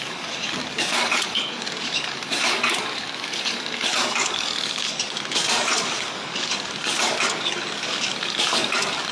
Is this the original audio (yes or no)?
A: no